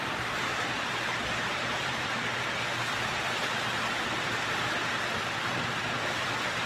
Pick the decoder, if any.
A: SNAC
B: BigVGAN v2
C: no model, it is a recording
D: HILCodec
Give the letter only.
B